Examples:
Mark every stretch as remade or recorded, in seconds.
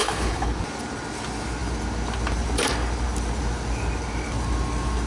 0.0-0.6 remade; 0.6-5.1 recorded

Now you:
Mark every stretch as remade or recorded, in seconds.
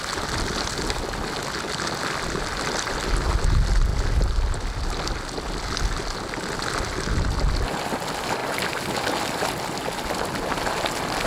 0.0-11.3 recorded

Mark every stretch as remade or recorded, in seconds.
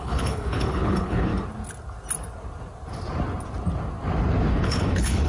0.0-1.3 remade; 1.3-4.5 recorded; 4.5-5.3 remade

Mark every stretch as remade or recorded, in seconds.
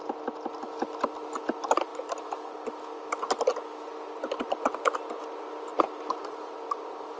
0.0-7.2 recorded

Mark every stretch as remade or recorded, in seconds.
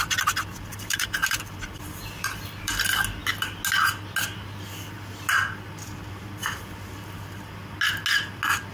0.0-0.7 recorded; 0.7-2.7 remade; 2.7-8.7 recorded